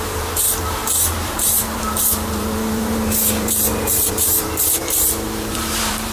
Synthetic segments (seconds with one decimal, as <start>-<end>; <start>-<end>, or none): 0.0-6.1